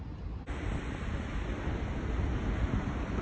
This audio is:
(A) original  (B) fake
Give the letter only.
A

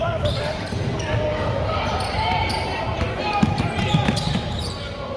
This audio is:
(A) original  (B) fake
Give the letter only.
B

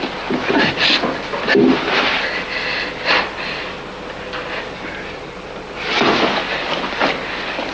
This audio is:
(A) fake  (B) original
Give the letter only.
B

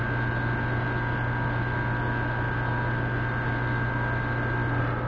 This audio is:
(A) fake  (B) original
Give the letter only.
B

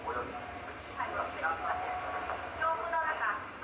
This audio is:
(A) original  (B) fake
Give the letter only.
A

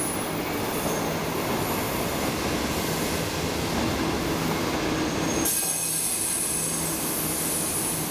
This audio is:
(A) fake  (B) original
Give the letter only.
B